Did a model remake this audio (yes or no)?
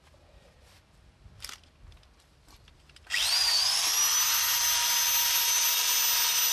no